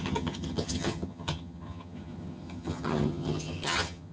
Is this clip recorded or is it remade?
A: remade